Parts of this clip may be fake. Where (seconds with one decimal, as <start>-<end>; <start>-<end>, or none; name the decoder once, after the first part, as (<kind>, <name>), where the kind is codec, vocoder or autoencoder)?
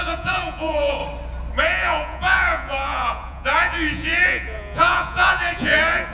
0.0-1.0 (vocoder, Vocos); 1.6-6.1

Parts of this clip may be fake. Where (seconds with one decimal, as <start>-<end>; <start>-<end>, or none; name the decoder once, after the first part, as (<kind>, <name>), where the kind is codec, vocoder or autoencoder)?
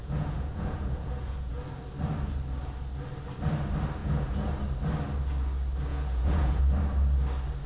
0.0-1.6 (vocoder, Vocos); 4.0-4.5; 5.9-6.6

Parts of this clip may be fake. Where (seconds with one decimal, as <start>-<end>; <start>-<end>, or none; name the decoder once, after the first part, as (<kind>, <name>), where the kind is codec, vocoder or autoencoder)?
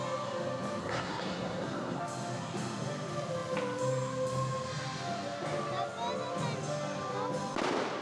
0.8-2.0 (codec, SNAC)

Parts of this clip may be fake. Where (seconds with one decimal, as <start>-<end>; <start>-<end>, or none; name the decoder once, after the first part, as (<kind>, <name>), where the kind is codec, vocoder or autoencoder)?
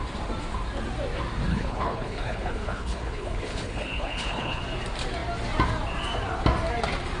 1.5-4.6 (codec, HILCodec)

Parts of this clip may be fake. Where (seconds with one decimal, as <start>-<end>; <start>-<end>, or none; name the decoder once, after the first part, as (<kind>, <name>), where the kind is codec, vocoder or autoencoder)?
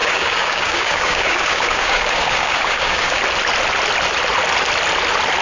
0.0-3.2 (codec, DAC)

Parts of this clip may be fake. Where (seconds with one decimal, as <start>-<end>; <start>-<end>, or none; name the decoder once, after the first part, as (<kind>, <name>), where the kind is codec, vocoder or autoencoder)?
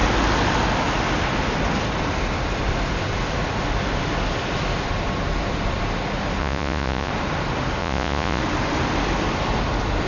6.4-7.1 (vocoder, Vocos); 7.8-8.4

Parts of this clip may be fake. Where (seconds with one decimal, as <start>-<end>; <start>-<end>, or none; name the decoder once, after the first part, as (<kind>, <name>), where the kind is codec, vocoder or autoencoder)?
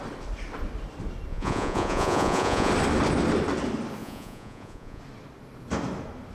1.3-2.7 (vocoder, Vocos); 4.0-5.0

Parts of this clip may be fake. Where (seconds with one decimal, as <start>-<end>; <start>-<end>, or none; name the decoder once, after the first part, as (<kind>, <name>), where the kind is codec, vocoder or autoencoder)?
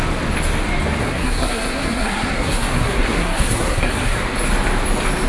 1.0-4.2 (codec, SNAC)